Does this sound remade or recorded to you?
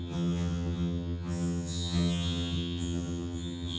remade